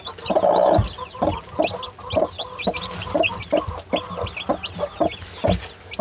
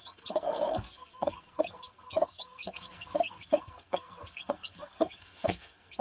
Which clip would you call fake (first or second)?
second